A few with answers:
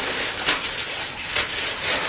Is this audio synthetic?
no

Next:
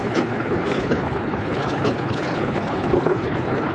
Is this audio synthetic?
yes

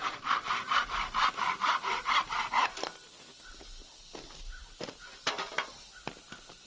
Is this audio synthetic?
no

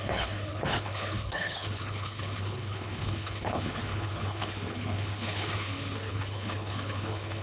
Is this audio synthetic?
yes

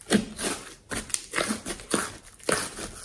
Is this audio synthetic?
no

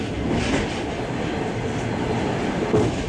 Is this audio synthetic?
no